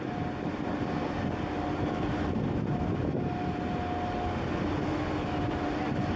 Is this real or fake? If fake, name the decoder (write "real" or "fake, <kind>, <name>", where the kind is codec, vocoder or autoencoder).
real